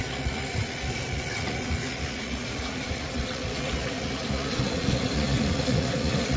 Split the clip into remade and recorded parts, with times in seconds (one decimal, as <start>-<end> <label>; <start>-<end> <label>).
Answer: 0.0-6.4 remade